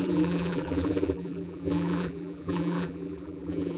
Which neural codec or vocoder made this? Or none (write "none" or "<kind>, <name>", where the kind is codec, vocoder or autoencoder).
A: vocoder, BigVGAN v2